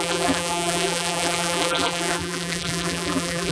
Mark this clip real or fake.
fake